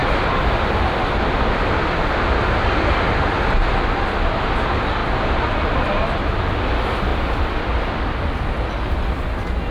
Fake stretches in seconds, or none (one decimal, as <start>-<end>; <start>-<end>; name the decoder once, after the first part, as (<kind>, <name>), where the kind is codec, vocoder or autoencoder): 7.1-7.8 (vocoder, BigVGAN v2)